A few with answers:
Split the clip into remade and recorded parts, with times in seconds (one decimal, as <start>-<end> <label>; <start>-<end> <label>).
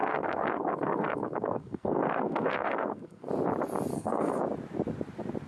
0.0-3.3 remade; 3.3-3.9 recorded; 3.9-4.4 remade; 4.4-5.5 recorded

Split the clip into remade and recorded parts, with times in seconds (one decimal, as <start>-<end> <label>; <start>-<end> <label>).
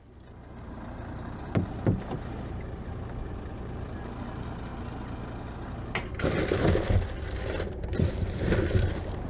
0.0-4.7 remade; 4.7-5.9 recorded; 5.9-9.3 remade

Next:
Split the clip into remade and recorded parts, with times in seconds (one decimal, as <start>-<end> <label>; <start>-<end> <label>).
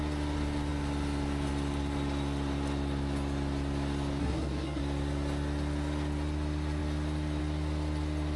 0.0-4.2 recorded; 4.2-4.8 remade; 4.8-8.4 recorded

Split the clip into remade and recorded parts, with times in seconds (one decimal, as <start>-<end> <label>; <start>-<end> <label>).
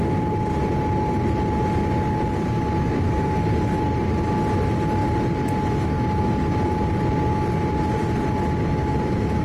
0.0-9.4 recorded